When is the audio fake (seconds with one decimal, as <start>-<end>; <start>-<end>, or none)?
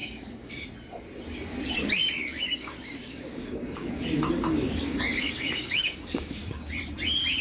0.0-0.6; 2.3-6.7